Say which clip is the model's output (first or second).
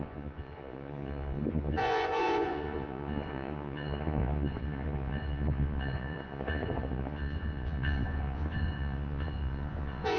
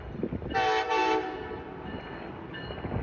first